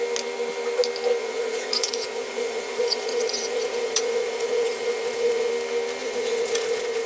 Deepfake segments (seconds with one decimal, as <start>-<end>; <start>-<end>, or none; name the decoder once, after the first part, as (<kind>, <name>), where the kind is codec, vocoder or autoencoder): 1.2-5.5 (vocoder, Vocos); 6.0-7.1

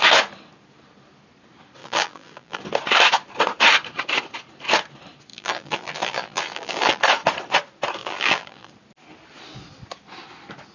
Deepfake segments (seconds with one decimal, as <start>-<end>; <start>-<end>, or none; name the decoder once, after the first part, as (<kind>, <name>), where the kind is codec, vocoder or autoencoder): 1.8-2.6 (vocoder, BigVGAN v2); 5.3-7.0; 8.0-8.7

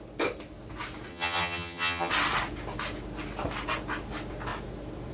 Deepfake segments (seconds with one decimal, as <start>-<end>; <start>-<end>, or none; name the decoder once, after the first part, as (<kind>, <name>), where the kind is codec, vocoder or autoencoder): 1.1-2.1 (vocoder, HiFi-GAN)

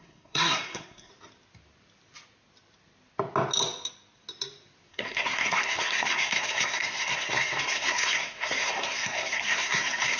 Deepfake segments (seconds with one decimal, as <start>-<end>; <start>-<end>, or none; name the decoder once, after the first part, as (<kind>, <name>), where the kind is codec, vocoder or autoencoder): 0.0-1.1 (codec, SNAC); 4.9-10.2

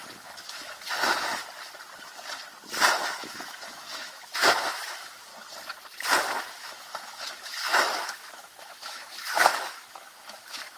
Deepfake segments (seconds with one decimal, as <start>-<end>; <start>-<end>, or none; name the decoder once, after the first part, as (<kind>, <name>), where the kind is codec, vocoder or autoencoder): 0.0-1.4 (autoencoder, DAC-VAE); 2.9-5.3; 6.5-10.8